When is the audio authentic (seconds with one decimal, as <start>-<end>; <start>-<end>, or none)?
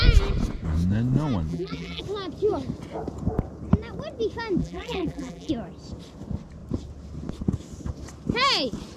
0.0-1.5; 2.0-4.6; 5.5-9.0